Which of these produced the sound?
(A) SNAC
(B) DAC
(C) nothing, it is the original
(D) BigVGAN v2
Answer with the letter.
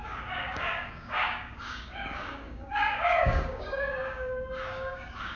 B